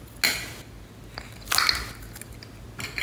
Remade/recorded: recorded